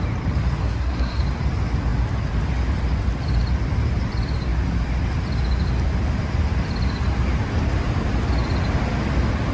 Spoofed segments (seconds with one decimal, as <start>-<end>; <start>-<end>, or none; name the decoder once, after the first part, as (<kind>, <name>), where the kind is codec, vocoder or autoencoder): 0.6-1.2 (codec, SNAC)